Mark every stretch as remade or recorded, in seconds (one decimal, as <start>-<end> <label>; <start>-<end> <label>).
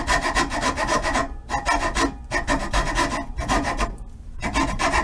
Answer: 0.0-1.2 remade; 1.2-2.4 recorded; 2.4-5.0 remade